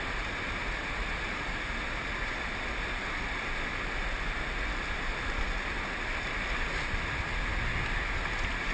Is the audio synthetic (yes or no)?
no